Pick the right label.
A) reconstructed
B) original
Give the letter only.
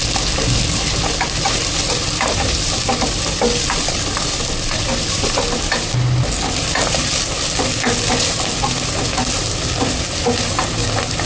B